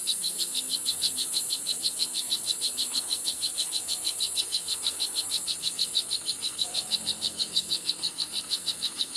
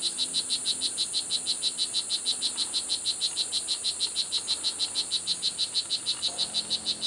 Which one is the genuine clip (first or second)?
second